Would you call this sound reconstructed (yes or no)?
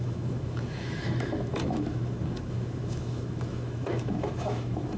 yes